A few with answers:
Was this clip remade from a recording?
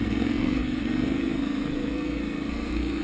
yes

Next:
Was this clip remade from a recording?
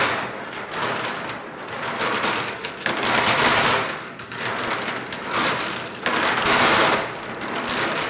yes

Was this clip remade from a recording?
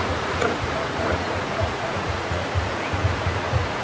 yes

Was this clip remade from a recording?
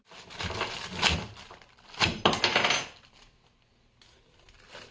no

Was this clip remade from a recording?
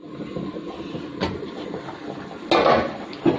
no